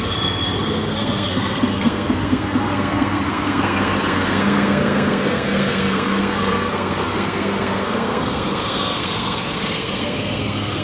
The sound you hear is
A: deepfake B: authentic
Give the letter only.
A